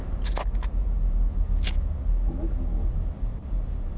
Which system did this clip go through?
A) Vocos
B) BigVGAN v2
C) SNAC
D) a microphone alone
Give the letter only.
D